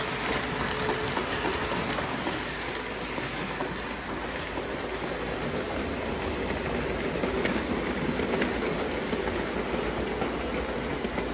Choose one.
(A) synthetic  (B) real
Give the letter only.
B